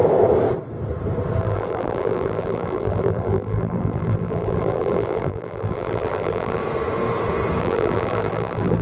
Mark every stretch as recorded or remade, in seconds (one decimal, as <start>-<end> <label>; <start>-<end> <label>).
0.0-1.4 recorded; 1.4-6.6 remade; 6.6-7.6 recorded; 7.6-8.8 remade